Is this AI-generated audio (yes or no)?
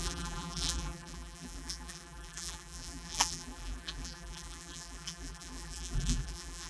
yes